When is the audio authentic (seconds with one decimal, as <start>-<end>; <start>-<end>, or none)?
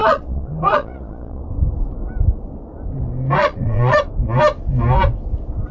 1.4-3.4; 4.0-5.7